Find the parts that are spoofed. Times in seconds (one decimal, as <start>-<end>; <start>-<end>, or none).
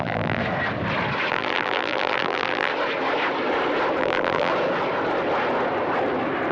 0.0-0.4; 1.3-2.7; 4.0-4.5